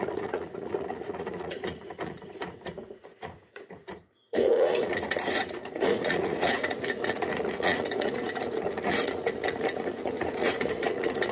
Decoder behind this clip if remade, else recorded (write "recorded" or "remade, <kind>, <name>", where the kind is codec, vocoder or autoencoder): remade, vocoder, Vocos